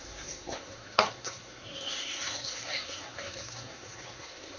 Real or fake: fake